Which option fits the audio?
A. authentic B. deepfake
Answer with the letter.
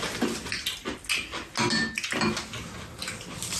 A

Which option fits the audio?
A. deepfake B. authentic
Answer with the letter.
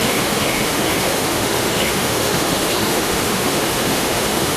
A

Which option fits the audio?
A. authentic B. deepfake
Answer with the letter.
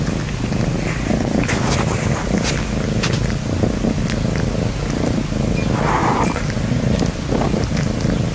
A